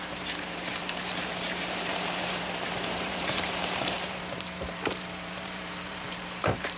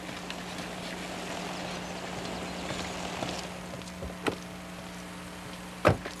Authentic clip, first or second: second